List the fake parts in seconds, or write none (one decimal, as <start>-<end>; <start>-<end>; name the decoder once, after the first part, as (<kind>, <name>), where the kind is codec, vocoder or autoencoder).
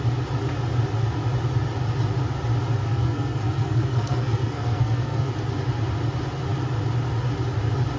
2.8-5.3 (codec, SNAC)